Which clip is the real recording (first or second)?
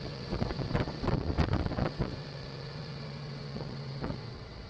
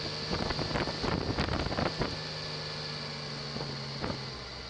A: second